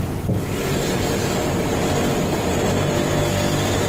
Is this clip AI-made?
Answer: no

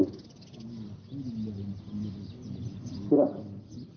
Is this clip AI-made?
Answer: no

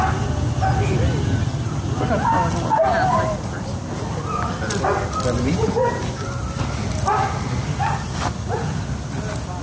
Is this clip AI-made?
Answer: no